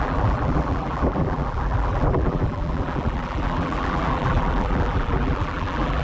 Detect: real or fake fake